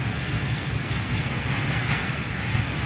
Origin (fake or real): fake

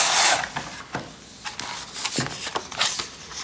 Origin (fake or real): real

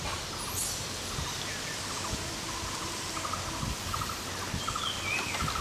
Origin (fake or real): real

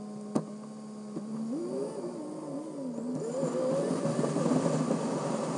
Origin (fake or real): real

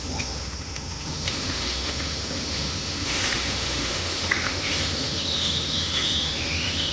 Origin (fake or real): fake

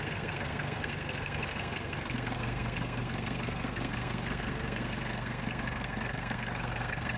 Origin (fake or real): fake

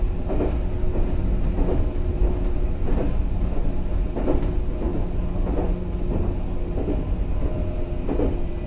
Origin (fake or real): real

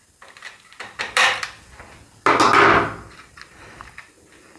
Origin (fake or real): real